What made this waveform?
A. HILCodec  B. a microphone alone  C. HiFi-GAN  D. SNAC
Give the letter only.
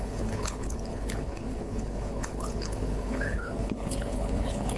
A